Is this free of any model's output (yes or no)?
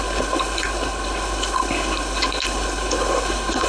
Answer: no